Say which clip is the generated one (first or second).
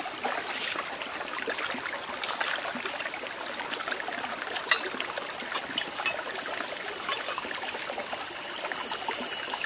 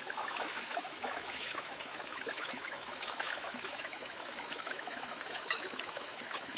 second